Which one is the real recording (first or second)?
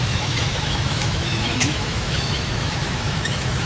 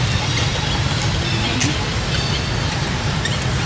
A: second